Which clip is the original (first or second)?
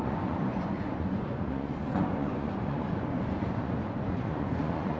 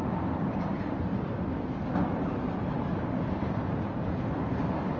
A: second